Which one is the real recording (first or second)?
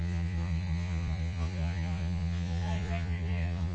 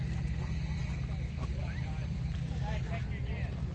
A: second